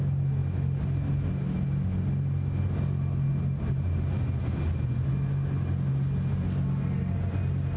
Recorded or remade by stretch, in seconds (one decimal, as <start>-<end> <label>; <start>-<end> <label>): 0.0-7.8 recorded